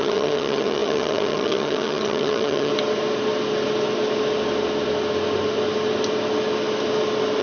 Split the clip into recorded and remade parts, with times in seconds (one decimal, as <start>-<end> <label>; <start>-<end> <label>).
0.0-2.7 remade; 2.7-7.4 recorded